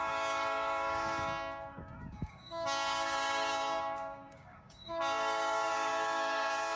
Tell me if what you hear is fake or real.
fake